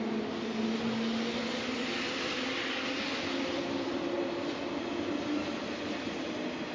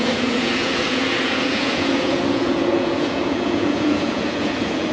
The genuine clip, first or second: first